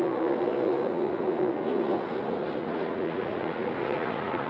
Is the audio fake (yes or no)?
yes